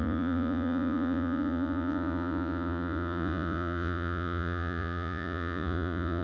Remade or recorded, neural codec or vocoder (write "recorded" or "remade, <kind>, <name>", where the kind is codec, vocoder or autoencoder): remade, vocoder, Vocos